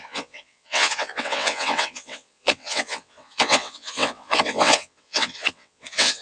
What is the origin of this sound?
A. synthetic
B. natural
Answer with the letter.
A